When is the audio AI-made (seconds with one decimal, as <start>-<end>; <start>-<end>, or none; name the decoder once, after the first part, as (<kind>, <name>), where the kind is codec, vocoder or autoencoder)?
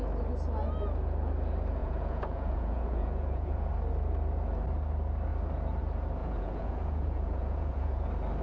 1.8-3.7 (vocoder, Vocos); 6.2-8.0